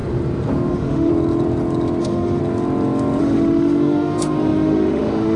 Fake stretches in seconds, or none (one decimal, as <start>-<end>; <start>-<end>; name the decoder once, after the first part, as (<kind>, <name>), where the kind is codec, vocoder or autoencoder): 0.7-1.1 (autoencoder, DAC-VAE); 2.0-2.4; 3.2-5.4